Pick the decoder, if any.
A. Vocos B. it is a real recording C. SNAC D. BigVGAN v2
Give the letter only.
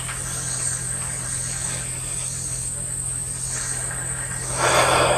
B